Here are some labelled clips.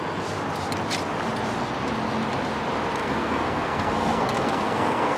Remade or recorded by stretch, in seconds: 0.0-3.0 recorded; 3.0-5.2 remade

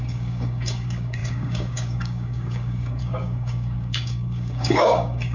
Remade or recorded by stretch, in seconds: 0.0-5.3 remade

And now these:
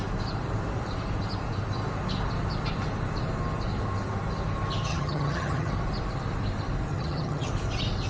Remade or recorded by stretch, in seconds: 0.0-4.9 recorded; 4.9-5.7 remade; 5.7-6.9 recorded; 6.9-7.5 remade; 7.5-8.1 recorded